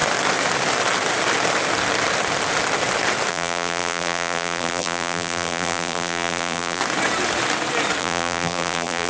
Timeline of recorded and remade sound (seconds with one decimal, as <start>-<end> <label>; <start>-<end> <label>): 0.0-3.3 recorded; 3.3-6.8 remade; 6.8-8.0 recorded; 8.0-9.1 remade